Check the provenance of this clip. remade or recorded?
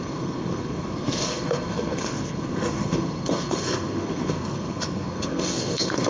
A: remade